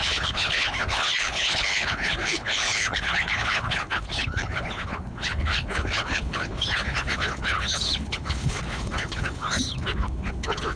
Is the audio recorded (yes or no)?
no